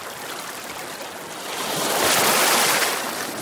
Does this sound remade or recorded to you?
recorded